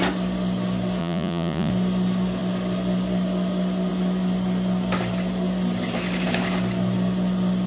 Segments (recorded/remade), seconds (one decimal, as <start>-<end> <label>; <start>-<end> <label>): 0.0-1.0 recorded; 1.0-1.7 remade; 1.7-7.7 recorded